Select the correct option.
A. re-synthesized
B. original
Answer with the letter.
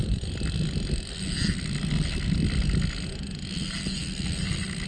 B